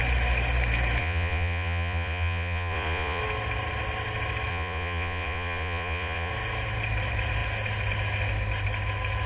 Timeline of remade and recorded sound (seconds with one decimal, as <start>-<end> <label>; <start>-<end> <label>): 0.0-1.0 recorded; 1.0-3.2 remade; 3.2-4.5 recorded; 4.5-6.3 remade; 6.3-9.3 recorded